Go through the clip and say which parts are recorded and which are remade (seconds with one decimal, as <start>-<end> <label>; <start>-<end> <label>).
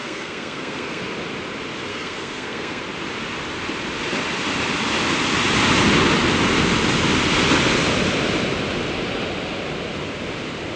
0.0-1.0 remade; 1.0-1.9 recorded; 1.9-2.8 remade; 2.8-10.8 recorded